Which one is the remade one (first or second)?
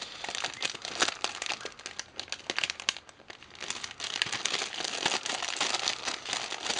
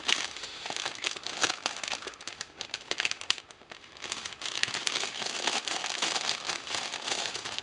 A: second